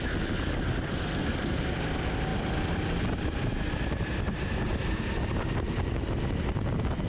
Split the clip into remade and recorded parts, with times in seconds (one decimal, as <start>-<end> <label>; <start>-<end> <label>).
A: 0.0-7.1 recorded